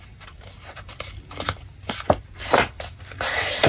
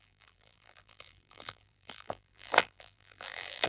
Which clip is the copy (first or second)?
second